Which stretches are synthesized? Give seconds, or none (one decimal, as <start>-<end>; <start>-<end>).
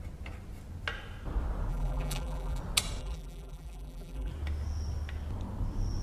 1.7-2.6; 3.0-4.3